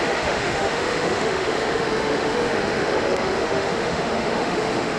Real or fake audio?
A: fake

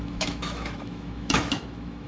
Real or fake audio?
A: fake